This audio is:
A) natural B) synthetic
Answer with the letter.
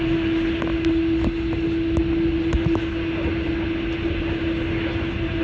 A